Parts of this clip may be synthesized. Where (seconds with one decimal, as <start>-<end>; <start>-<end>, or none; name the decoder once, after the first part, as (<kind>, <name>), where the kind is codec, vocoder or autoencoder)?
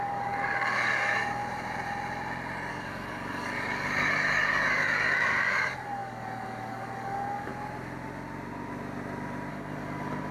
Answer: 0.0-1.4 (codec, DAC); 2.7-7.5; 9.5-10.3